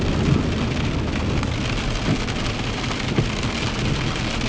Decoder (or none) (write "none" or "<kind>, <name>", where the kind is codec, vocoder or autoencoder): none